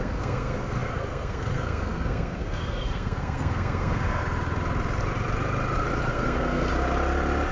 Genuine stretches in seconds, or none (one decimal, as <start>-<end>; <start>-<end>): 4.2-6.1; 6.7-7.5